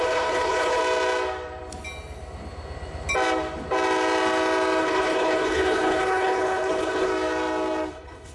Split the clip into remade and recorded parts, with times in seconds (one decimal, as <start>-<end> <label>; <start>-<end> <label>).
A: 0.0-0.8 remade; 0.8-4.8 recorded; 4.8-7.1 remade; 7.1-7.9 recorded; 7.9-8.3 remade